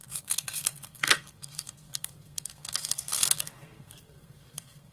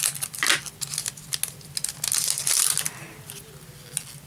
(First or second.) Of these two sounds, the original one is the second